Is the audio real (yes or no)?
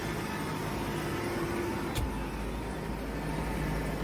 yes